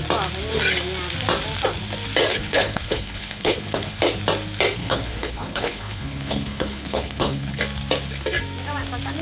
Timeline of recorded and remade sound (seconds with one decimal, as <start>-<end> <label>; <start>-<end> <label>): 0.0-2.3 recorded; 2.3-4.0 remade; 4.0-4.8 recorded; 4.8-7.6 remade; 7.6-9.2 recorded